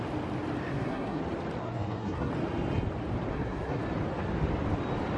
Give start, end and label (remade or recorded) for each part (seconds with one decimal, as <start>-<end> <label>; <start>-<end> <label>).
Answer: 0.0-0.7 recorded; 0.7-1.2 remade; 1.2-1.6 recorded; 1.6-2.3 remade; 2.3-3.3 recorded; 3.3-3.8 remade; 3.8-5.2 recorded